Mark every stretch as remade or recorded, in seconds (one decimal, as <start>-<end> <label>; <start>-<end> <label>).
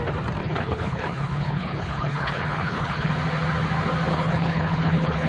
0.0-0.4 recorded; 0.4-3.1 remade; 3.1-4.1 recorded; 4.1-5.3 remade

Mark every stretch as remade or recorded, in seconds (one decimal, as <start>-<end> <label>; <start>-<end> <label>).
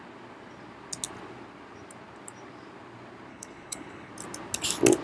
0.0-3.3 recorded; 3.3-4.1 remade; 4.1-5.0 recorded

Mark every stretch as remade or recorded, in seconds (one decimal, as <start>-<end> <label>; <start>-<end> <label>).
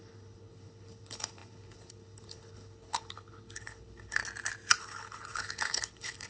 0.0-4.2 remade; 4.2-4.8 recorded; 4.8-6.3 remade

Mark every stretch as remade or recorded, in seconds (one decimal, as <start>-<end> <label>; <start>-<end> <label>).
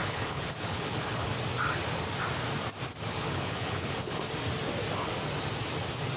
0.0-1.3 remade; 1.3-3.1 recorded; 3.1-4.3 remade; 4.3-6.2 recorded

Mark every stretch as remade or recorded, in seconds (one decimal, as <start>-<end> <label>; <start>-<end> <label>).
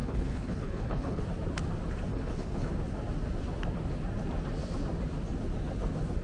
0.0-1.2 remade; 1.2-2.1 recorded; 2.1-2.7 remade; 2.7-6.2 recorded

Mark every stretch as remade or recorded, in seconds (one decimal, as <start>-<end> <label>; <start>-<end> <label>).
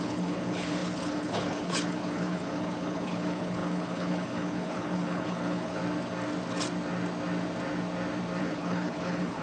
0.0-5.8 remade; 5.8-8.4 recorded; 8.4-9.4 remade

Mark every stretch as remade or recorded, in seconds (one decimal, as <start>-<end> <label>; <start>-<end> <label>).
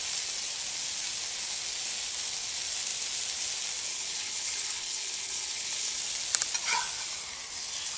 0.0-3.9 recorded; 3.9-6.0 remade; 6.0-8.0 recorded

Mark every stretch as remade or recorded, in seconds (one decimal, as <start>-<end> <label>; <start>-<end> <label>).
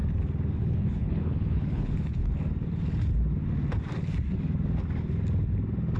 0.0-0.6 recorded; 0.6-2.2 remade; 2.2-6.0 recorded